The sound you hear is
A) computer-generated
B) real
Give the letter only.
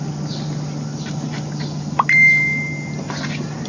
B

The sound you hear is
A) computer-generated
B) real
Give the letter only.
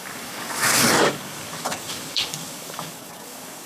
A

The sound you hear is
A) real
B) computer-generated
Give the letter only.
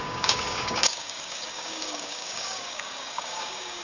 B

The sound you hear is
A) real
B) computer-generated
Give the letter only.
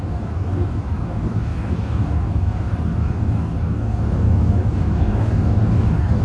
B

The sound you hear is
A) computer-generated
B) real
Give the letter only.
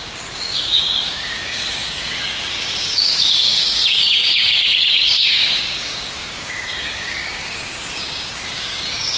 A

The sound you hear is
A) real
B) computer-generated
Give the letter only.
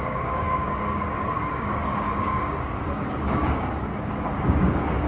B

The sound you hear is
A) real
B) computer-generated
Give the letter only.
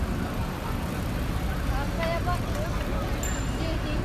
A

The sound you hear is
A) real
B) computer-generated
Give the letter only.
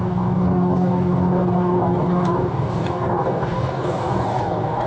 B